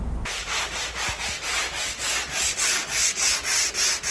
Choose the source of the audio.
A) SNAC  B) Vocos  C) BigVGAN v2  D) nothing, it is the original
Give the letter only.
D